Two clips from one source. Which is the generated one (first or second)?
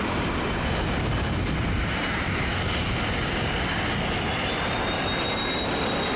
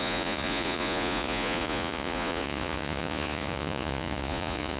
second